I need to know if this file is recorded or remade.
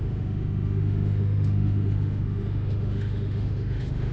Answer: remade